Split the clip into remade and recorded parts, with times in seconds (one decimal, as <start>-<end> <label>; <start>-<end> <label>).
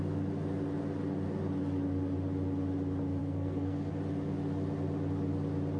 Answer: 0.0-3.2 recorded; 3.2-3.9 remade; 3.9-5.8 recorded